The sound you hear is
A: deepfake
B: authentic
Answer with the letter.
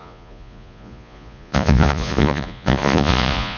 A